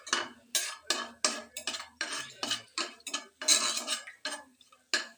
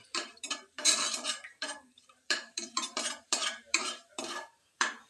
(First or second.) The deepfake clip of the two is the second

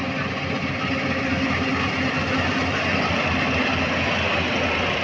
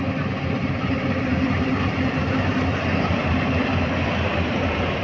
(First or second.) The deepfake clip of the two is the second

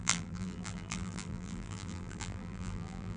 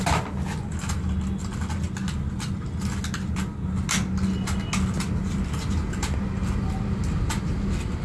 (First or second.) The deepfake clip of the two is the first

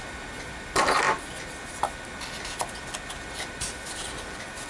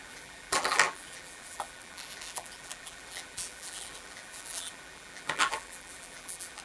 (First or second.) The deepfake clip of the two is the second